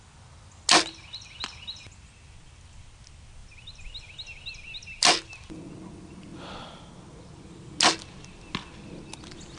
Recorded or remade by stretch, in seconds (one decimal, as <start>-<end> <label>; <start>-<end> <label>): 0.0-6.3 recorded; 6.3-6.8 remade; 6.8-9.6 recorded